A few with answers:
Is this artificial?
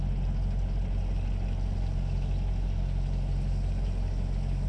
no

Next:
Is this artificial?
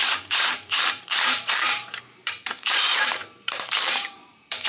yes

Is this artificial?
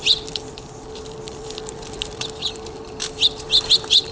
yes